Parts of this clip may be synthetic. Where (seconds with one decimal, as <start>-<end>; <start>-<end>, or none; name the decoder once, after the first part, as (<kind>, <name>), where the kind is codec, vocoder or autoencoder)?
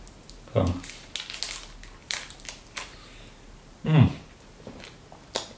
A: 2.0-4.8 (vocoder, BigVGAN v2)